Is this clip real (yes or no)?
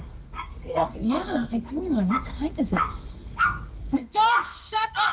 no